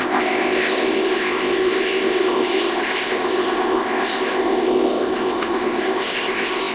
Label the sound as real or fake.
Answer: fake